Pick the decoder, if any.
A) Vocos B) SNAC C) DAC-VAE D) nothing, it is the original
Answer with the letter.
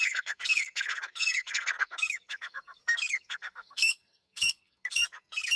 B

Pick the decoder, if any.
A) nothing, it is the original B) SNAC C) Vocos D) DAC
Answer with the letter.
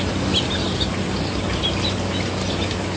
A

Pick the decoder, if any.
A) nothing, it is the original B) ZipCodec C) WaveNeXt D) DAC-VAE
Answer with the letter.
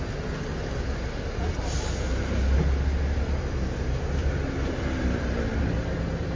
A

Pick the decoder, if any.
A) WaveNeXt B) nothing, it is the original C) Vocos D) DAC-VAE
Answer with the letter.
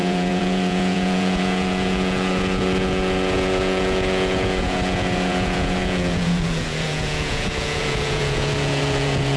C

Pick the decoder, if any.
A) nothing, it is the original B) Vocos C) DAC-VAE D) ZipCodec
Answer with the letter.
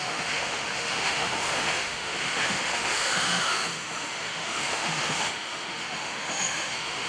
C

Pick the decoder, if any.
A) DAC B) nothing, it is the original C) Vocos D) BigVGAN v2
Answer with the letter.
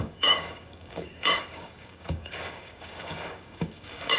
A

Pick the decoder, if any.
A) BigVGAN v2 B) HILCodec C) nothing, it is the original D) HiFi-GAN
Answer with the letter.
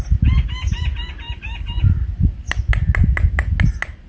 C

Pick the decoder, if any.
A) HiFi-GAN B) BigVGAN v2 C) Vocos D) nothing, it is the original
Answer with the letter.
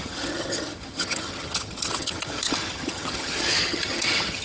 A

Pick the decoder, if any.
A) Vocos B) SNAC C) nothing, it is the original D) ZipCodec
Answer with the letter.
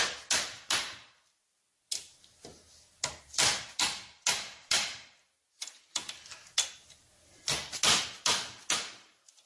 C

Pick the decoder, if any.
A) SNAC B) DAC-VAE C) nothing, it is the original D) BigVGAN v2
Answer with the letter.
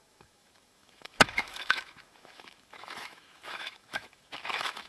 B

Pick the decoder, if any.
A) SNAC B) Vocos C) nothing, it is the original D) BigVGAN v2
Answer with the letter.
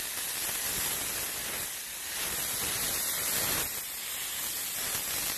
C